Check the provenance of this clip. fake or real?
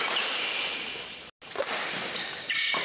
real